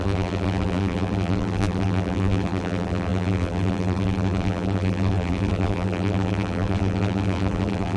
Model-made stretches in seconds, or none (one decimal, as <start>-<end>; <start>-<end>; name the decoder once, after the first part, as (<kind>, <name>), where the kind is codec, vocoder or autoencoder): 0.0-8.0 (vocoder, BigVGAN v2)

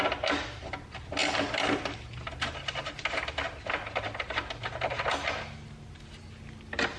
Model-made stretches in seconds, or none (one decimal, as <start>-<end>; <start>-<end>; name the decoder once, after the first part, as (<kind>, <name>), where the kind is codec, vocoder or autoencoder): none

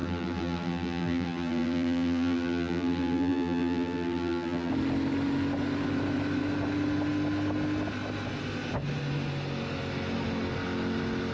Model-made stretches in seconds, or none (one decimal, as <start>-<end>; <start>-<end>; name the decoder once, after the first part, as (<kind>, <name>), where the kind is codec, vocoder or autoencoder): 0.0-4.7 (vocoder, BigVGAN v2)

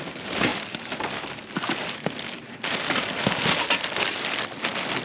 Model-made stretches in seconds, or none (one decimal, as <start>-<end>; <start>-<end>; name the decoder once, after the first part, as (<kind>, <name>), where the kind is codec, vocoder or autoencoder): none

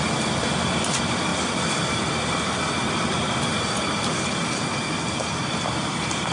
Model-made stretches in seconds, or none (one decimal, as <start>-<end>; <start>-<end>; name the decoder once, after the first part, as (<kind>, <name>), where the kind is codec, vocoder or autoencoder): 0.0-6.3 (vocoder, BigVGAN v2)

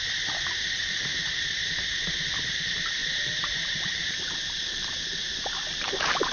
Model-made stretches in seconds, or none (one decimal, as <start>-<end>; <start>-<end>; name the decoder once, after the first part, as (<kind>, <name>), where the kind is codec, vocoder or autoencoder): 0.0-1.1 (vocoder, BigVGAN v2); 2.5-3.0; 3.7-6.3